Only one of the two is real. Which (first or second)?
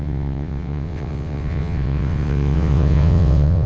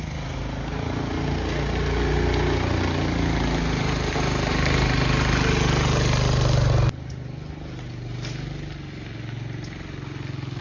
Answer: second